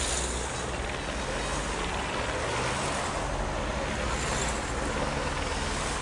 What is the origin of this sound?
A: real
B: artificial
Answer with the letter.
A